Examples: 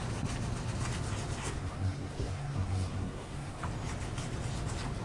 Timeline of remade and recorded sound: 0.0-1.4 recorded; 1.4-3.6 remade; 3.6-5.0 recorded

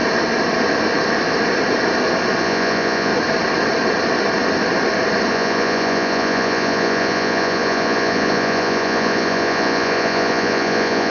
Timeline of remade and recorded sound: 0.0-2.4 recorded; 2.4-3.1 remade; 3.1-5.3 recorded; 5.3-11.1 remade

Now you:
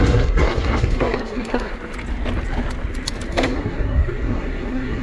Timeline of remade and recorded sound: 0.0-1.7 remade; 1.7-3.3 recorded; 3.3-5.0 remade